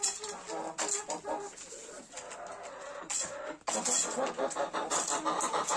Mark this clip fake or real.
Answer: real